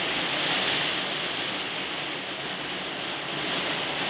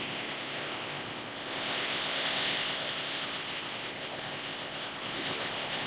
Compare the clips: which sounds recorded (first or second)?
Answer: first